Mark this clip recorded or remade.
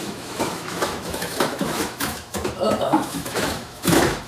remade